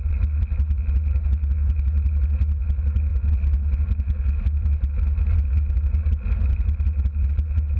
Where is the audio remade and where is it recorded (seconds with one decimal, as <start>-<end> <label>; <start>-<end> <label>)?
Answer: 0.0-7.8 recorded